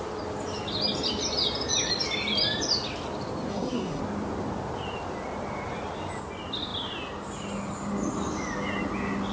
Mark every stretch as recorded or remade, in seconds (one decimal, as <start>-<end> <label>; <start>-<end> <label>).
0.0-3.5 recorded; 3.5-4.0 remade; 4.0-9.3 recorded

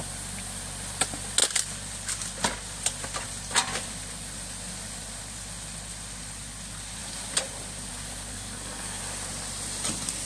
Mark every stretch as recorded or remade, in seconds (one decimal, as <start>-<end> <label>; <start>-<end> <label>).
0.0-8.3 recorded; 8.3-9.0 remade; 9.0-10.3 recorded

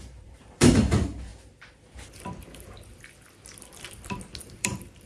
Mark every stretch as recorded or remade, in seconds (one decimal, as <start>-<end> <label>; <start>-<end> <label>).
0.0-1.3 remade; 1.3-4.4 recorded; 4.4-5.1 remade

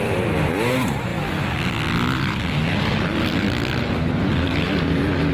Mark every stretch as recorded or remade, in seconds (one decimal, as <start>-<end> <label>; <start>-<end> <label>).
0.0-5.3 recorded

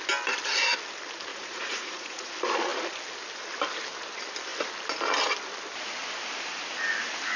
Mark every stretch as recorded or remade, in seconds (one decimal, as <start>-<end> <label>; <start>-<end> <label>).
0.0-1.3 recorded; 1.3-2.3 remade; 2.3-7.4 recorded

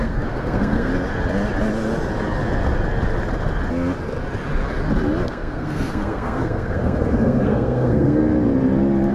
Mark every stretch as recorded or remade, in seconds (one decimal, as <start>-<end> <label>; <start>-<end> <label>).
0.0-0.9 remade; 0.9-5.3 recorded; 5.3-8.2 remade; 8.2-9.1 recorded

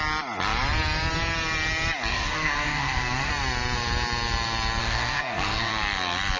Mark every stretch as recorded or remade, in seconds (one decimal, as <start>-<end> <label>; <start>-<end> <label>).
0.0-2.1 recorded; 2.1-3.3 remade; 3.3-4.8 recorded; 4.8-5.7 remade; 5.7-6.4 recorded